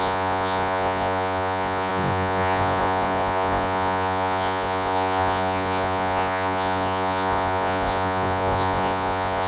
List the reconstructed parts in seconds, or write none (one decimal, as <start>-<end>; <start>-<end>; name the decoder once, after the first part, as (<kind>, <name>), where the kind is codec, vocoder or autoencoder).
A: 0.0-9.5 (vocoder, Vocos)